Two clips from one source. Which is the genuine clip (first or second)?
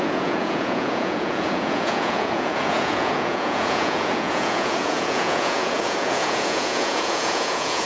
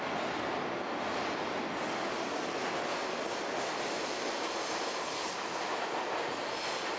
second